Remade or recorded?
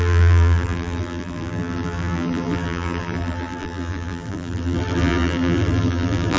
remade